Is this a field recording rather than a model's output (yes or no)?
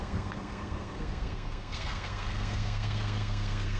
no